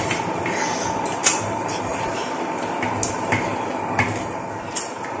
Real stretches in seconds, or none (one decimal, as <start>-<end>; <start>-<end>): 0.0-5.2